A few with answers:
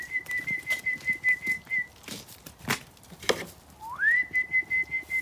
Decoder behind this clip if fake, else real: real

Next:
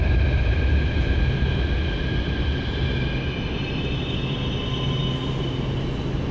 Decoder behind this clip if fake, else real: real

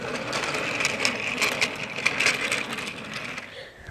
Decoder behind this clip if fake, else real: real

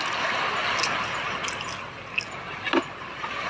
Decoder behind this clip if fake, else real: real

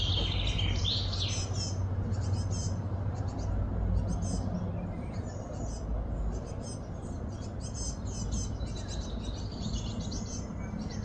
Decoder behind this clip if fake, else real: real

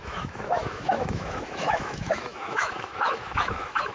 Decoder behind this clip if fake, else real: fake, autoencoder, DAC-VAE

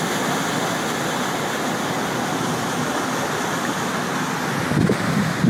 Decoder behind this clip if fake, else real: real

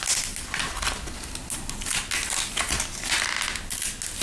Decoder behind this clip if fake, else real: real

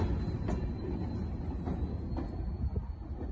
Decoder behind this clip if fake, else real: real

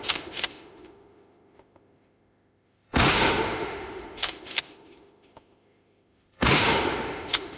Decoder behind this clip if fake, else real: fake, autoencoder, DAC-VAE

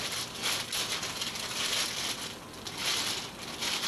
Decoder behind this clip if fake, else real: real